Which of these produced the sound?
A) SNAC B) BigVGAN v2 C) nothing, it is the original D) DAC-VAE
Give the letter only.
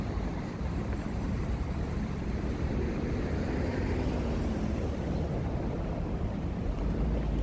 C